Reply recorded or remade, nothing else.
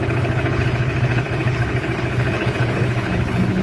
remade